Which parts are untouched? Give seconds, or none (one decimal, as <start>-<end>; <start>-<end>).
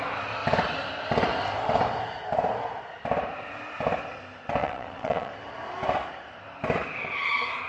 0.0-4.6; 5.3-7.7